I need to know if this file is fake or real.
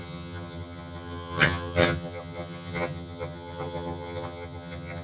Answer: fake